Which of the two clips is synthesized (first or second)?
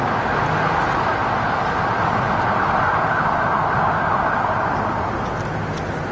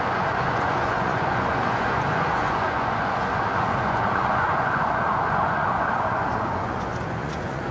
second